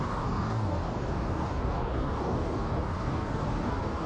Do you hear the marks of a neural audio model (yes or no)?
yes